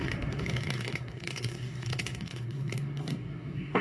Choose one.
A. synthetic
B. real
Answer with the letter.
A